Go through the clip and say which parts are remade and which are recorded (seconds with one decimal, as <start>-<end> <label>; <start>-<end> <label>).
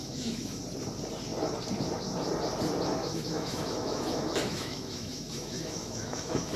0.0-0.6 remade; 0.6-3.0 recorded; 3.0-6.6 remade